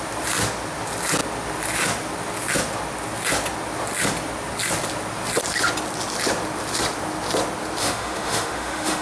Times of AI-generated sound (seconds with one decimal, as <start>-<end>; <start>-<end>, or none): 7.8-9.0